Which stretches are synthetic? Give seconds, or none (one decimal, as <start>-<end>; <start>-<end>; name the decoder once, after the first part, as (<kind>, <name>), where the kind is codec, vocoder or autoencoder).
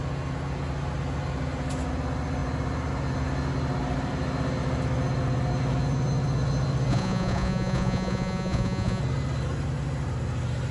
6.9-9.0 (vocoder, Vocos)